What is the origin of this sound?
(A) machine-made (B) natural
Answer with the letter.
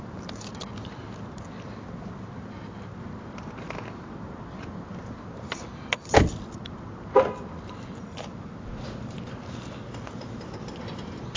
B